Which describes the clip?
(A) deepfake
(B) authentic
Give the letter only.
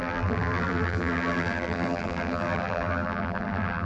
A